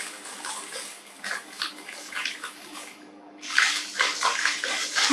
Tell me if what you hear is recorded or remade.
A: remade